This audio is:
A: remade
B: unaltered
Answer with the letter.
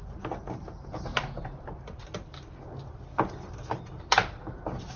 B